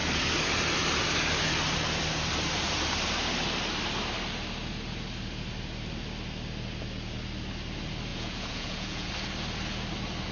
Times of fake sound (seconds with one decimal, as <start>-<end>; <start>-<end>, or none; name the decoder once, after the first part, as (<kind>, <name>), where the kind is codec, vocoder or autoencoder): 8.1-9.1 (vocoder, Vocos)

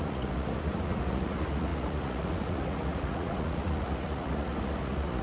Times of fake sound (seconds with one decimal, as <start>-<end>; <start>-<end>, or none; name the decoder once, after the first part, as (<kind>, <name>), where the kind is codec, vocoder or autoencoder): 0.0-5.2 (vocoder, Vocos)